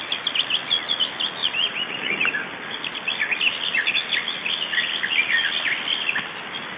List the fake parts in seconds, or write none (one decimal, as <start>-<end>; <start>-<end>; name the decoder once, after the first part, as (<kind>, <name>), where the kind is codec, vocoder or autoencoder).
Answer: 1.4-2.1 (vocoder, Vocos)